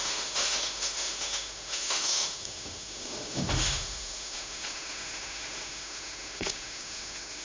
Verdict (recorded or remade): remade